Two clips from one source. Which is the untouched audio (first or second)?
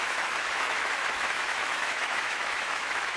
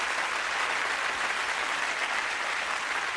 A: second